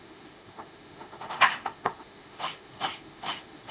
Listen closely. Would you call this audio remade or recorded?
remade